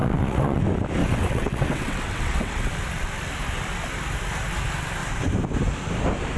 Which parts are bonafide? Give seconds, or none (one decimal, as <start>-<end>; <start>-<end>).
0.6-1.0; 2.7-6.4